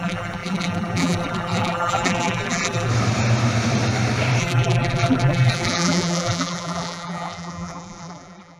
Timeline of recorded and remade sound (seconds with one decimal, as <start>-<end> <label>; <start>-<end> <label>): 0.0-2.9 remade; 2.9-4.4 recorded; 4.4-8.6 remade